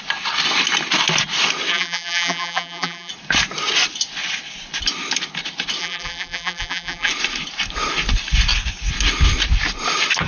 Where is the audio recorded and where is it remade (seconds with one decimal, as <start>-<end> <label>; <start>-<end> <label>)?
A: 0.0-1.7 recorded; 1.7-3.1 remade; 3.1-5.8 recorded; 5.8-7.1 remade; 7.1-10.3 recorded